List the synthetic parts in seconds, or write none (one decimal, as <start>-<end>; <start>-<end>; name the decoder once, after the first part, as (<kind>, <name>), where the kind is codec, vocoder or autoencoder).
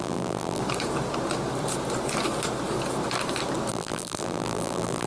0.0-0.6 (vocoder, BigVGAN v2); 3.7-5.1